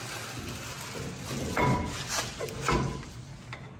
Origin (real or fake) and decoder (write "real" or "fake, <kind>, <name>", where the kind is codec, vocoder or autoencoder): real